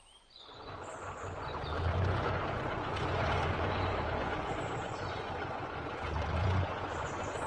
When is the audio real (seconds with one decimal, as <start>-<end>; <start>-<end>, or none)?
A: none